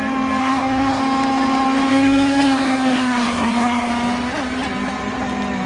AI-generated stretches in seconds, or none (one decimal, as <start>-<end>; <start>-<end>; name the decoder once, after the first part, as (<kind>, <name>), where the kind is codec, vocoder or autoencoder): 0.4-1.0 (codec, SNAC); 1.9-3.9